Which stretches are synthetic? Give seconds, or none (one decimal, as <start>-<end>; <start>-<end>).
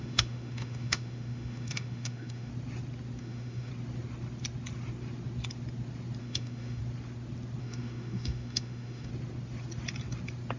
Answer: 0.0-2.5; 3.2-3.7; 6.2-6.8; 7.6-9.1